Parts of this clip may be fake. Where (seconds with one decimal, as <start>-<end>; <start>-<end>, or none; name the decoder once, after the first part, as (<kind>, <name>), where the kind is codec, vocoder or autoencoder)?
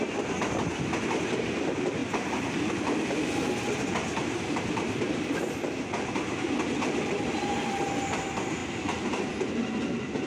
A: 2.0-2.7 (vocoder, BigVGAN v2); 4.0-4.9; 8.6-9.3